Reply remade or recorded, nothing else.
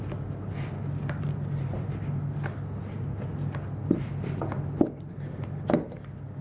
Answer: recorded